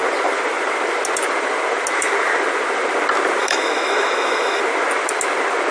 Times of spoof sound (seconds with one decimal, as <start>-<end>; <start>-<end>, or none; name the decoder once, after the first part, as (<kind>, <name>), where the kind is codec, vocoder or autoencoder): 3.4-4.6 (autoencoder, DAC-VAE)